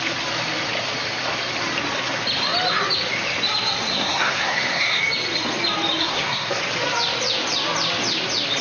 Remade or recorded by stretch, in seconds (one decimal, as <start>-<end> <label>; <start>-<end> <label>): 0.0-3.9 recorded; 3.9-5.0 remade; 5.0-6.0 recorded; 6.0-6.6 remade; 6.6-8.6 recorded